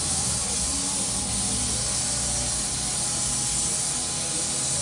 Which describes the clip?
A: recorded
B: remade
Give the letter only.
A